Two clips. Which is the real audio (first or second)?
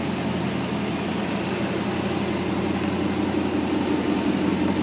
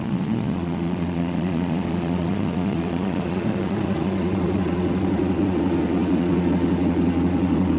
first